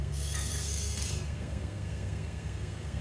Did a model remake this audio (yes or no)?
yes